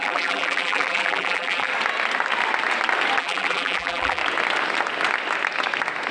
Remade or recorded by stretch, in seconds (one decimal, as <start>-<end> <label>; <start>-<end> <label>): 0.0-1.7 remade; 1.7-3.2 recorded; 3.2-4.2 remade; 4.2-6.1 recorded